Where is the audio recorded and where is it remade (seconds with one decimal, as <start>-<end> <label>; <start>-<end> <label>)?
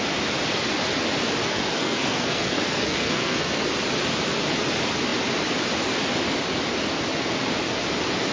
0.0-1.4 recorded; 1.4-3.7 remade; 3.7-8.3 recorded